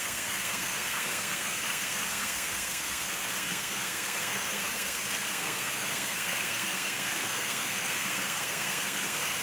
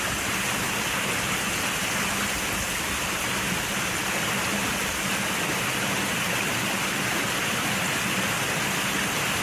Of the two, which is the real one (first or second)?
second